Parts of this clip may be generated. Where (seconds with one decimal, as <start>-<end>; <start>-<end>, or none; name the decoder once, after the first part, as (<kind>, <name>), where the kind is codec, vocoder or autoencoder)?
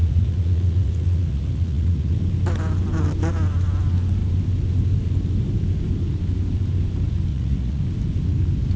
0.0-2.2 (vocoder, Vocos); 7.3-7.8